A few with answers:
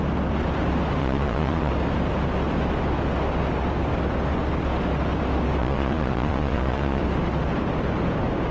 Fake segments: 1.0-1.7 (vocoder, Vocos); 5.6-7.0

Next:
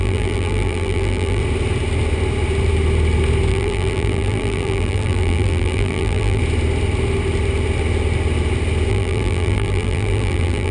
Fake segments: 0.0-1.4 (vocoder, BigVGAN v2); 3.5-6.4; 8.9-10.7